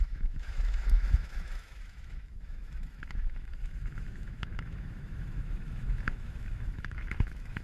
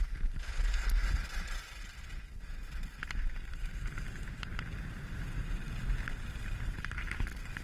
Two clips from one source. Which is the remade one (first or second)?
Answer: first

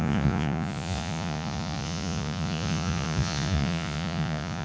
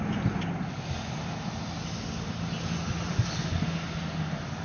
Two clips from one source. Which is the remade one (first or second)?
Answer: first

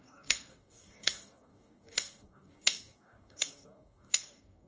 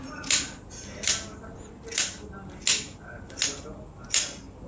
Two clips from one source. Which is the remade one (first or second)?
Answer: first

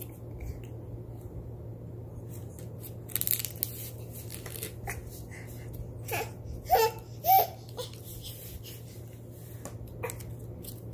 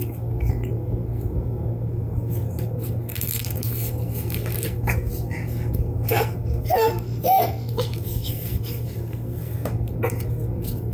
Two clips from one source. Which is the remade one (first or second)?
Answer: second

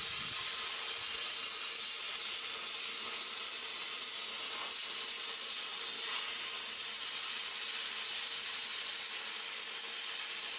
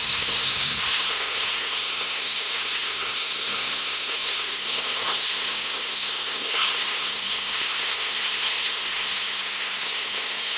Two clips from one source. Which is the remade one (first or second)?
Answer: second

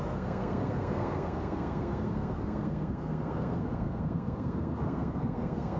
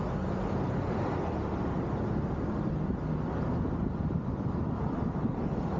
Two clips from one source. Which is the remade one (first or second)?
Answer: first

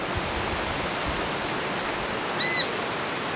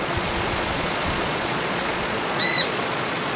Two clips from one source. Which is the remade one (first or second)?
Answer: second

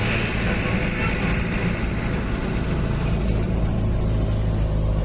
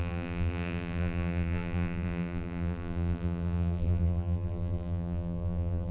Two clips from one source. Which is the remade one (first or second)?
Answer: second